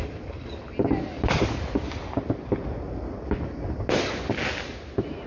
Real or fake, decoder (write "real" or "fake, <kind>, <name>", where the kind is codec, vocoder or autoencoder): real